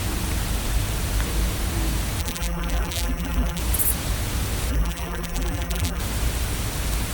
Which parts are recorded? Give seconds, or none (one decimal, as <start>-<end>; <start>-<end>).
0.0-2.2; 3.6-4.7; 6.0-7.1